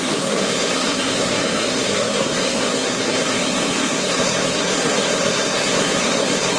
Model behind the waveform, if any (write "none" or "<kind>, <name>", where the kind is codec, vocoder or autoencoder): codec, SNAC